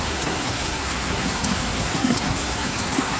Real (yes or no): no